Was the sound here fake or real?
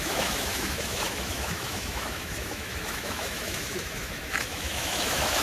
fake